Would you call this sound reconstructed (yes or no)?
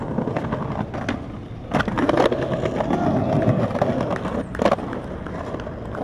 no